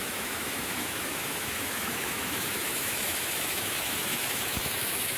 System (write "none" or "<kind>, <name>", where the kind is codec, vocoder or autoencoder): autoencoder, DAC-VAE